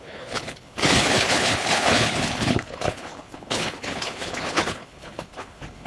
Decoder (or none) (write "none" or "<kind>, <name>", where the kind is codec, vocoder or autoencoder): codec, HILCodec